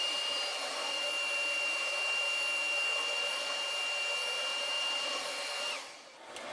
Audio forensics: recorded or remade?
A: recorded